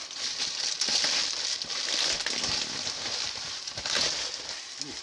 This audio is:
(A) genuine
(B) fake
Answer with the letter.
A